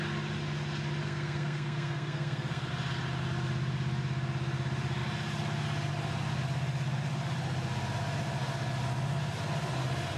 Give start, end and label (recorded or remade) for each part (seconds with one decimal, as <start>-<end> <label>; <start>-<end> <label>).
0.0-1.0 recorded; 1.0-2.7 remade; 2.7-10.2 recorded